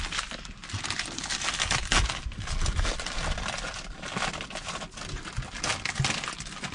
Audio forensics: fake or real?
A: real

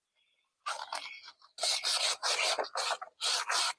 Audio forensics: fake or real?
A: real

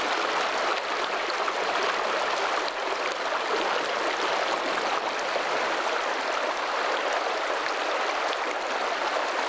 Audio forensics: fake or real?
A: real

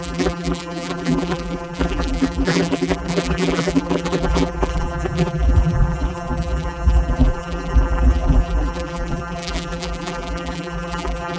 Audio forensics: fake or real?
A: fake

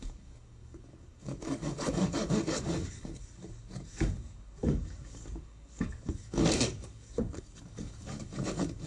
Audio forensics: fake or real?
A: fake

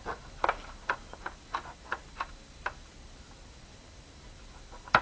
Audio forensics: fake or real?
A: real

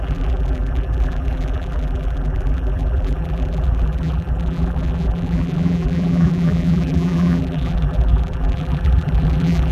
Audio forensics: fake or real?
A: fake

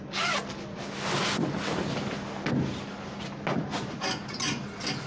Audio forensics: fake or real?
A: real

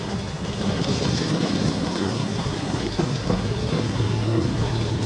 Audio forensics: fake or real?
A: fake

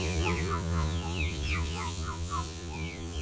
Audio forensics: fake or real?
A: fake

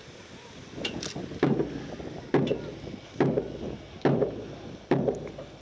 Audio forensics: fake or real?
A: real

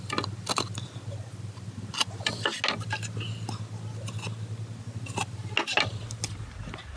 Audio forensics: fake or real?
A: real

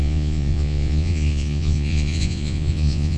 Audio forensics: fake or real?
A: fake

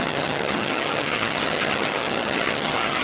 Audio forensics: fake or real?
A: fake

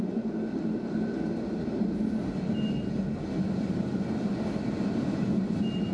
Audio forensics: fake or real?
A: real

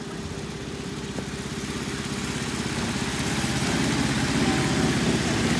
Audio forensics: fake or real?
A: real